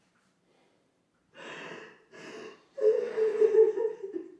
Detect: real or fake fake